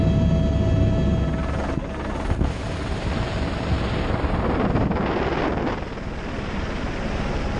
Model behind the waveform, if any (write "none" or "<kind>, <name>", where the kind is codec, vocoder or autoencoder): none